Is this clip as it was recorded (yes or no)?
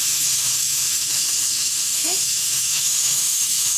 no